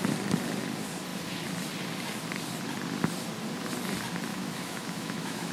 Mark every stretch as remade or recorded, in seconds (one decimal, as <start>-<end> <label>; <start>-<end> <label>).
0.0-4.3 recorded; 4.3-5.5 remade